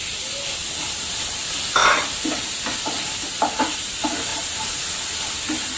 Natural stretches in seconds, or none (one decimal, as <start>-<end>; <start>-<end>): 0.0-0.6; 1.3-4.3; 4.9-5.8